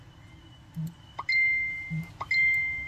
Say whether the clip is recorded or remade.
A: recorded